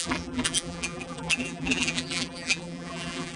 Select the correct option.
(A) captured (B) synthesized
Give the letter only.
B